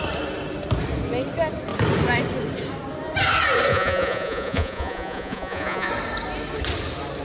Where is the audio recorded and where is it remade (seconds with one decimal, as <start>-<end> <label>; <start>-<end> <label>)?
0.0-3.7 recorded; 3.7-5.9 remade; 5.9-7.2 recorded